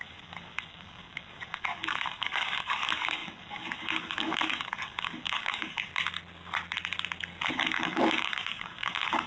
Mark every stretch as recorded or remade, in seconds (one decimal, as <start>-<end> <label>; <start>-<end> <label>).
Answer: 0.0-5.9 remade; 5.9-7.5 recorded; 7.5-9.3 remade